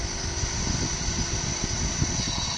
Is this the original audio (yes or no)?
yes